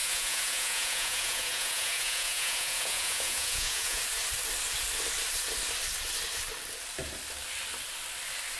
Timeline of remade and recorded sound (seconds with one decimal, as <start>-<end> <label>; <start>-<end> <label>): 0.0-4.0 remade; 4.0-8.6 recorded